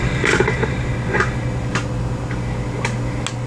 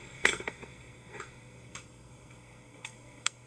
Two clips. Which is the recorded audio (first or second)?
first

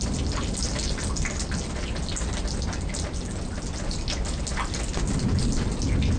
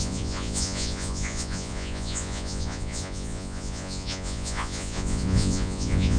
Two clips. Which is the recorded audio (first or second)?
first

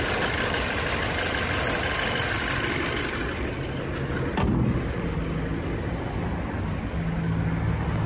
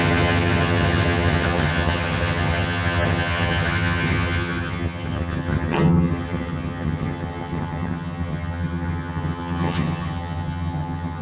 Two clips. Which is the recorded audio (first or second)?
first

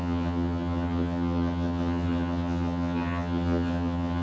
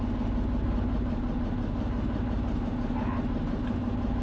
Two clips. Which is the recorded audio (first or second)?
second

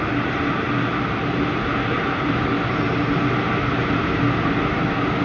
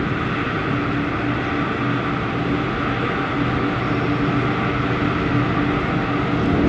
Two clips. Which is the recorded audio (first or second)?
second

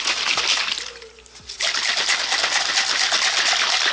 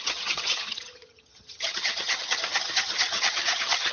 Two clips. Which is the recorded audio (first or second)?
first